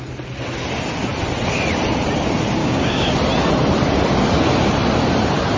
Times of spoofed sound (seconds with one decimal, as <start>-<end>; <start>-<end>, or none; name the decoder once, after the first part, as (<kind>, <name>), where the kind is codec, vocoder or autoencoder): 2.6-3.1 (codec, DAC)